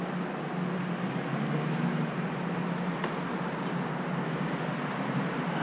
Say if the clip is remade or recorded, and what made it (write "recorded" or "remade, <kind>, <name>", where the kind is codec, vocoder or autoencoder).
recorded